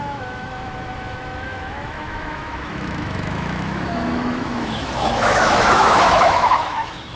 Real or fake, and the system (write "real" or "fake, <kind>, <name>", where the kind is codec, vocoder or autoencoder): fake, autoencoder, DAC-VAE